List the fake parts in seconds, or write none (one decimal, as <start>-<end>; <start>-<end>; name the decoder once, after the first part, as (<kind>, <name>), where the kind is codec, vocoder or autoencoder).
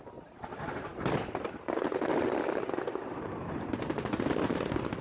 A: 0.0-5.0 (vocoder, BigVGAN v2)